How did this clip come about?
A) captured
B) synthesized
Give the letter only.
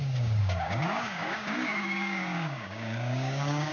B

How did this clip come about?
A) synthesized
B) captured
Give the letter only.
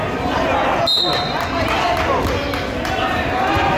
B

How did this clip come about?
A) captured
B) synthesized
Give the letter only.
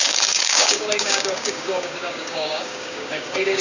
B